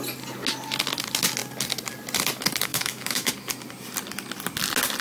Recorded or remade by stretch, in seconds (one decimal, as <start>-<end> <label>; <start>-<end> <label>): 0.0-2.7 recorded; 2.7-3.3 remade; 3.3-5.0 recorded